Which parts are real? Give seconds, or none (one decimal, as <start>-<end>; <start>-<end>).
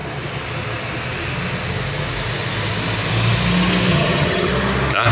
0.0-3.9; 4.5-5.1